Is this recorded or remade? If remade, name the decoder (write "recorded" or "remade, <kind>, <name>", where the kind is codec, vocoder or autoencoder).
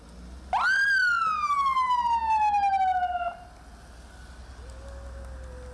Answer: recorded